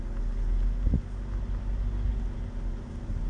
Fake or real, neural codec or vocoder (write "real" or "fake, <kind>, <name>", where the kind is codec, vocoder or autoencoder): real